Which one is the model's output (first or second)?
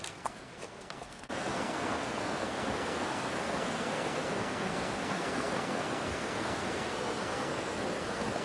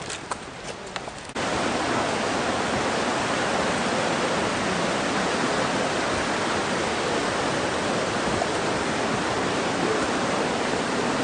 first